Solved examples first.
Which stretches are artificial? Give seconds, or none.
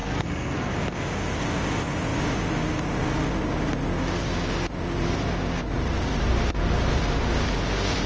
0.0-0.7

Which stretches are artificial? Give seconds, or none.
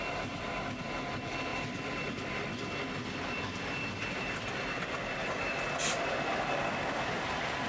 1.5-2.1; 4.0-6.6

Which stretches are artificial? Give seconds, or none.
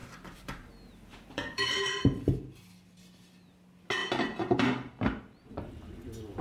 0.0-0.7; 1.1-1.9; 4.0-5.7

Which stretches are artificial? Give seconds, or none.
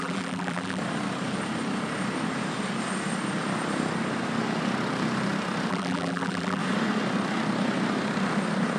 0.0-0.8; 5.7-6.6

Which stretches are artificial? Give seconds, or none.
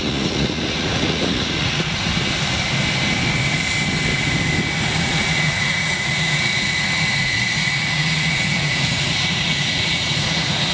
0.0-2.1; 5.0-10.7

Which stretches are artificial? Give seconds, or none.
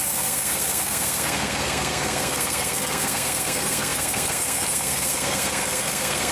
0.0-6.3